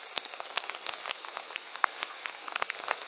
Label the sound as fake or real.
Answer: fake